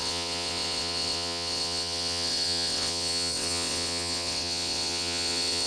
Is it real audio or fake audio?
fake